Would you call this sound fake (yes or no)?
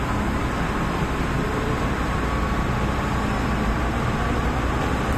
no